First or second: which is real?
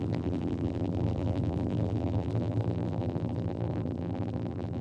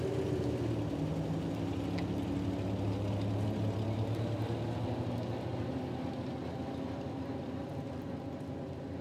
second